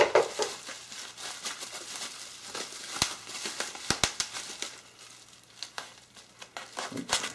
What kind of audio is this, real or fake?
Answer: real